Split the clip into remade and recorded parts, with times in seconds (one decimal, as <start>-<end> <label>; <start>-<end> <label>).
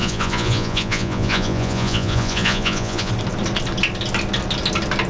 0.0-3.1 remade; 3.1-5.1 recorded